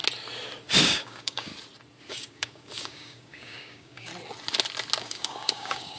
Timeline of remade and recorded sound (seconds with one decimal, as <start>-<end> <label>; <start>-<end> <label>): 0.0-0.8 recorded; 0.8-1.5 remade; 1.5-2.0 recorded; 2.0-4.1 remade; 4.1-5.0 recorded; 5.0-6.0 remade